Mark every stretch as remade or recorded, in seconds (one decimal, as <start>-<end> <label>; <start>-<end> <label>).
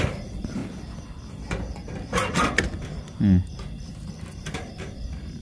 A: 0.0-0.6 remade; 0.6-1.3 recorded; 1.3-1.9 remade; 1.9-3.5 recorded; 3.5-5.4 remade